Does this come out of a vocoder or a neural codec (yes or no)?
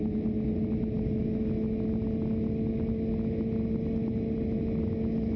no